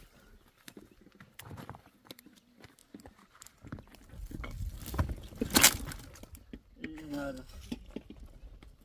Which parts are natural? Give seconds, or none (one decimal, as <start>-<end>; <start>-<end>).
0.0-7.0; 7.6-8.8